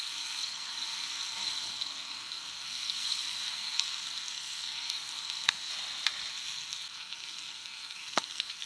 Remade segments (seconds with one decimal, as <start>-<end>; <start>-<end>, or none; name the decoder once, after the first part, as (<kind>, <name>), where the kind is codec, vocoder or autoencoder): 0.0-5.7 (codec, SNAC); 6.3-8.7